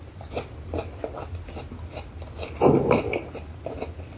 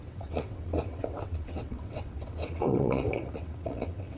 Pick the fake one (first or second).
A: second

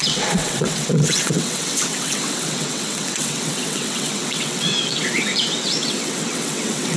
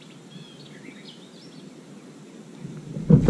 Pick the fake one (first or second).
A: first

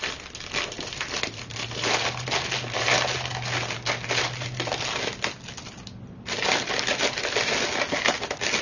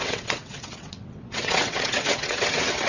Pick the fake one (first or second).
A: second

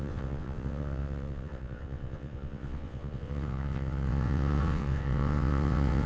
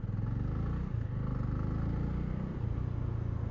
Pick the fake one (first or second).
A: first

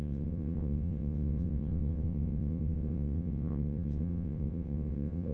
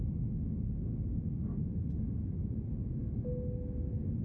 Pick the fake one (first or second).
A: first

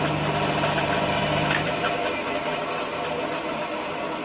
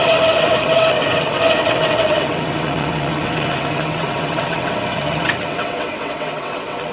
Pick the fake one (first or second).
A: second